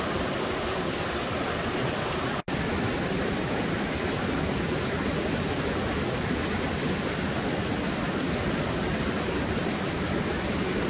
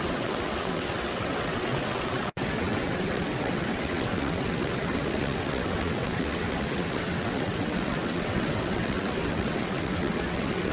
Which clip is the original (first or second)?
first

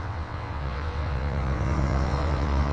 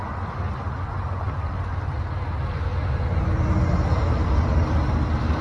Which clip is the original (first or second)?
second